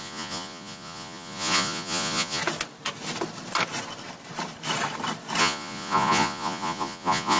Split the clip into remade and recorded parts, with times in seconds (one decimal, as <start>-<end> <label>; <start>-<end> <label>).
0.0-2.4 remade; 2.4-5.4 recorded; 5.4-7.4 remade